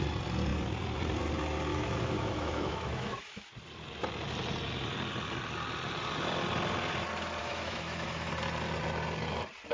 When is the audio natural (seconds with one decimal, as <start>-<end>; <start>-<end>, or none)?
0.0-1.7; 3.5-7.4; 8.3-9.7